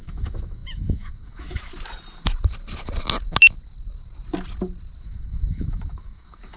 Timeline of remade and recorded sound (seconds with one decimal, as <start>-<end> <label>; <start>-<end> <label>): 0.0-1.7 remade; 1.7-5.0 recorded; 5.0-6.6 remade